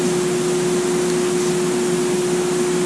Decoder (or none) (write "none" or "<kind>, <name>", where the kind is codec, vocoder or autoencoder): none